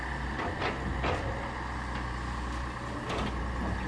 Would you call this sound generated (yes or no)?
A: no